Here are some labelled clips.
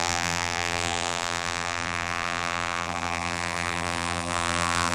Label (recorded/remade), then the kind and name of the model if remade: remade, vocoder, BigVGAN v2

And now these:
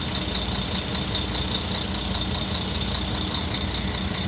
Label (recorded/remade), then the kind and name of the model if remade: recorded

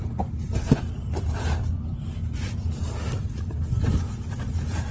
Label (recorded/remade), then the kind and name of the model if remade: recorded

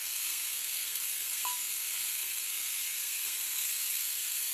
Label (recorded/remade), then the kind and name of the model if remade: remade, codec, SNAC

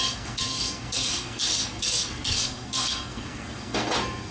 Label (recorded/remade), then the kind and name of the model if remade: remade, codec, SNAC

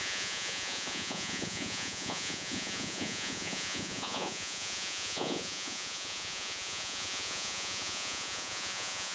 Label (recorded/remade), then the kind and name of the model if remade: remade, vocoder, Vocos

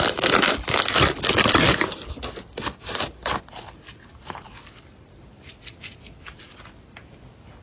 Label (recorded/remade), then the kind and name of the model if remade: recorded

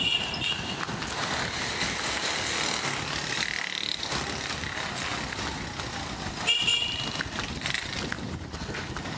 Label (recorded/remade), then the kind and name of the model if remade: recorded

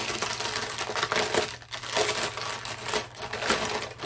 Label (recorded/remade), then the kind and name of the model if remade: recorded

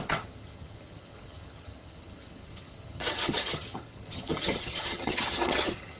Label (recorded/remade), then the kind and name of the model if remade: remade, vocoder, HiFi-GAN